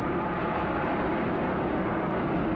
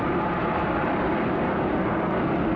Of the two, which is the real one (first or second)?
first